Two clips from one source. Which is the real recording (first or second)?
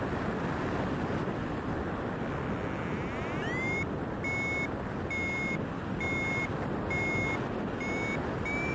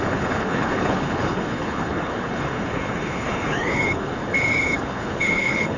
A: first